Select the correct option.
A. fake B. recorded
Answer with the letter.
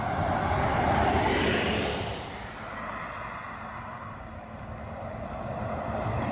A